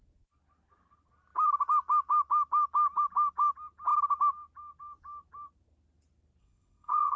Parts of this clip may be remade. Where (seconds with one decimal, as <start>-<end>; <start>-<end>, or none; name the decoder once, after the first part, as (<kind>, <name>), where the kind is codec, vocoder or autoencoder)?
6.4-7.2 (vocoder, WaveNeXt)